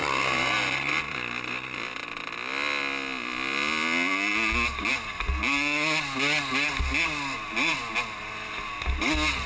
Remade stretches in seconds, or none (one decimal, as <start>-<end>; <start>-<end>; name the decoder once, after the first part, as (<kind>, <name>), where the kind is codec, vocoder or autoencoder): none